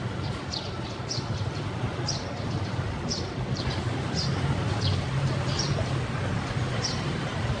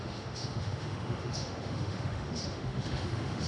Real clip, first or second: first